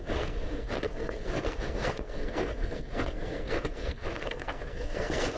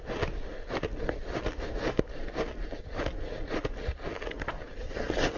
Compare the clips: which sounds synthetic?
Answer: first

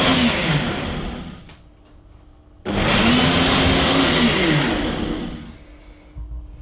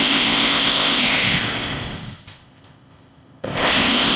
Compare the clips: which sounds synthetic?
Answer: second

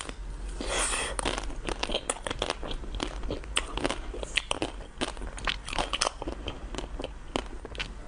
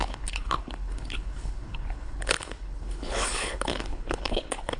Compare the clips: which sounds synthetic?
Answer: second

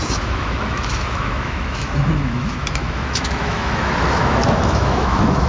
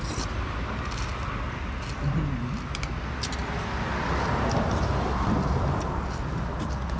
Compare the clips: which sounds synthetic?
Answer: first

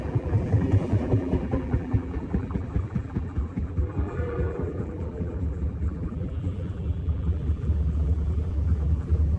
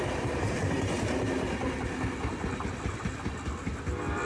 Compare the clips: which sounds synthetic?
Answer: first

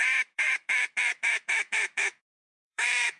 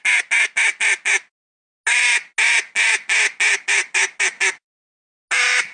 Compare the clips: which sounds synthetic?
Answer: first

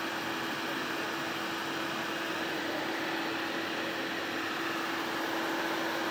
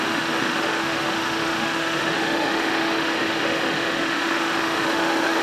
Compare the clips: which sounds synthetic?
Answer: second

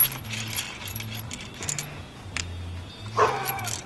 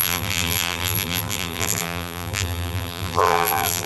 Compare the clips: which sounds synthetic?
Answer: second